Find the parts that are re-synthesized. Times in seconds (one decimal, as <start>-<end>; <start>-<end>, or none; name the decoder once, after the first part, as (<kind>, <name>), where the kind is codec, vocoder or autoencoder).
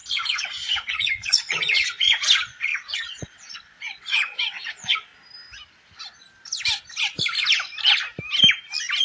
0.0-5.1 (vocoder, Vocos)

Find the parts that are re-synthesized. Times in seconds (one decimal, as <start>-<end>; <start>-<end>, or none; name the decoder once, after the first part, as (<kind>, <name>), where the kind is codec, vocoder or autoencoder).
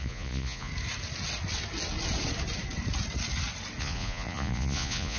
0.0-0.7 (vocoder, Vocos); 3.8-5.2